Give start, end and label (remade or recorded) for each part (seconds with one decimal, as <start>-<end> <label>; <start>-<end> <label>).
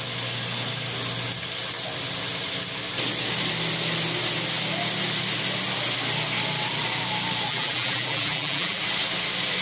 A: 0.0-7.5 recorded; 7.5-8.8 remade; 8.8-9.6 recorded